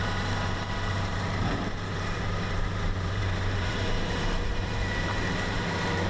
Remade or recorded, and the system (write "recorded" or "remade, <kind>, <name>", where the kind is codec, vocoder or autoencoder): remade, vocoder, BigVGAN v2